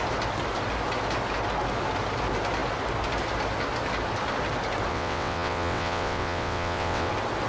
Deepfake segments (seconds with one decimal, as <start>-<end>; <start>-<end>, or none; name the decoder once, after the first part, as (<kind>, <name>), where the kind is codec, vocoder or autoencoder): 4.9-7.1 (vocoder, WaveNeXt)